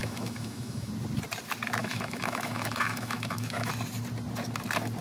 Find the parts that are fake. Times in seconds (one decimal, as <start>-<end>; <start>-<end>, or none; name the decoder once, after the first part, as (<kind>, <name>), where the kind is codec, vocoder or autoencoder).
0.0-0.9 (autoencoder, DAC-VAE); 1.8-3.7

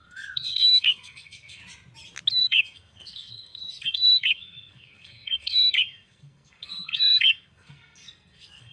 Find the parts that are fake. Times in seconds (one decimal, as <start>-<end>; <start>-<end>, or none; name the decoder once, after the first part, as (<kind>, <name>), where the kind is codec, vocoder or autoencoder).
0.0-1.6 (codec, SNAC); 2.4-8.7

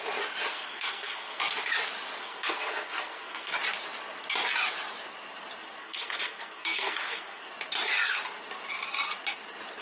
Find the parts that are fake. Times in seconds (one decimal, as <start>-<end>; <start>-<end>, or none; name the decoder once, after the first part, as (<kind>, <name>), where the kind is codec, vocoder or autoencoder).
0.5-1.4 (codec, SNAC); 2.2-3.5; 5.8-7.5

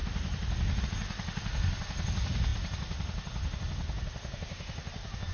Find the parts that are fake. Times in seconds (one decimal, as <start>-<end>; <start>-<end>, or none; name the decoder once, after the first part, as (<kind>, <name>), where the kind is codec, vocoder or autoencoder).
none

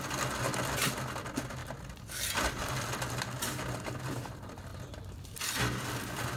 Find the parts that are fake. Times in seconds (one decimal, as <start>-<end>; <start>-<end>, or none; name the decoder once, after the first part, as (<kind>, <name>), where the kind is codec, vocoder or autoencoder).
none

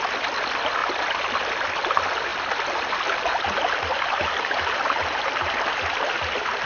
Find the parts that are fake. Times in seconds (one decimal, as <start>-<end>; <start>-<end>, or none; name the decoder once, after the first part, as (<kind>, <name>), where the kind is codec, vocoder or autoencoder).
none